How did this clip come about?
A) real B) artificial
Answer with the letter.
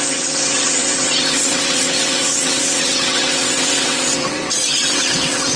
B